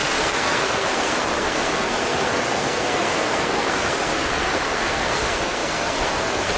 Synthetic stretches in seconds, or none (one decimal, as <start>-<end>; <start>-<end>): 0.0-6.6